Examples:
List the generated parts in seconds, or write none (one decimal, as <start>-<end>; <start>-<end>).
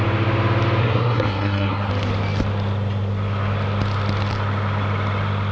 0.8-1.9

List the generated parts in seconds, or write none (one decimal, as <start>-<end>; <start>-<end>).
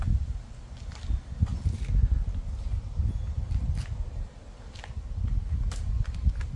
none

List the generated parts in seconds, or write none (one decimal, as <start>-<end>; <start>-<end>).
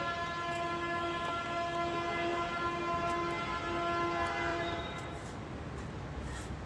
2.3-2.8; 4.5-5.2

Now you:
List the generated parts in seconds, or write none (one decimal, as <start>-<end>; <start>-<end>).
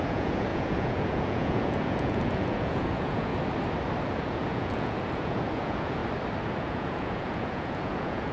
0.0-3.3; 4.1-6.0; 6.6-8.3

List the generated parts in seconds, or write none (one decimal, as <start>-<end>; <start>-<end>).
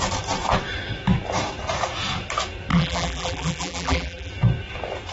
2.7-4.3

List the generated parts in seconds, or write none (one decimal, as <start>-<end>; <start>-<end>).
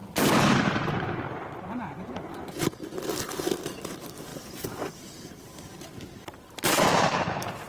0.0-2.1; 4.3-7.7